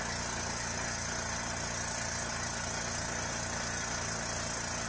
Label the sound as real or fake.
real